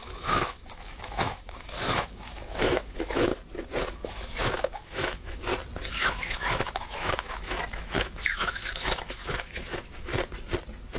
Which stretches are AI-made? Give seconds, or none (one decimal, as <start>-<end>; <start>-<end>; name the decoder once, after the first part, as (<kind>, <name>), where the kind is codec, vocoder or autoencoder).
0.0-3.3 (autoencoder, DAC-VAE); 3.9-5.5; 6.0-10.1